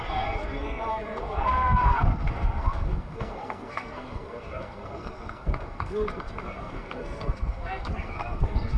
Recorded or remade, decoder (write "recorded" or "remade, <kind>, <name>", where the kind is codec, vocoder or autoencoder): remade, codec, SNAC